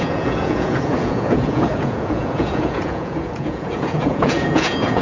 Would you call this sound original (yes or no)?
no